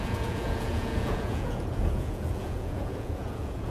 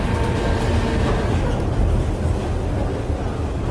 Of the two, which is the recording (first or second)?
second